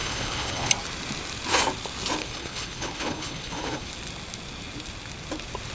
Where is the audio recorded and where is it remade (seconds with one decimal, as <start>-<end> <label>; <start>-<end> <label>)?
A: 0.0-0.7 remade; 0.7-2.2 recorded; 2.2-3.9 remade; 3.9-5.7 recorded